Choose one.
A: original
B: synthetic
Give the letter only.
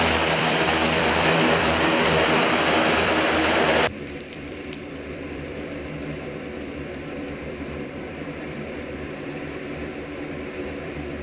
B